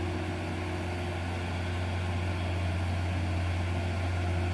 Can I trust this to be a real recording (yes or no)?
yes